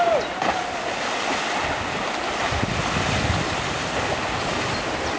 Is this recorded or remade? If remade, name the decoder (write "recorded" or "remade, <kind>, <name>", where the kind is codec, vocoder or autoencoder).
recorded